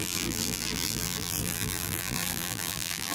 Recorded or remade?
remade